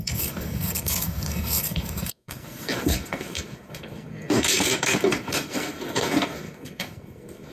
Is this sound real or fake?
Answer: fake